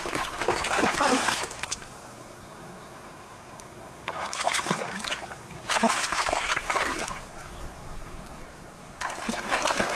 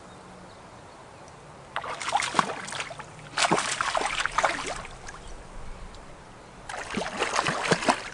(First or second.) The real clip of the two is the second